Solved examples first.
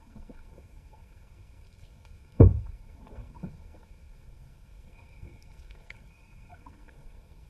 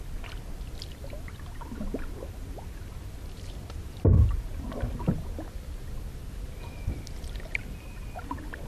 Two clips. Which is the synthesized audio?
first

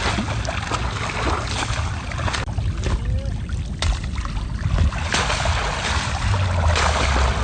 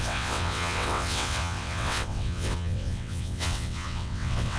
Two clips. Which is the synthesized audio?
second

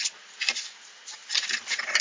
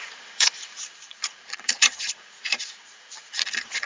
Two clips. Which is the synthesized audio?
second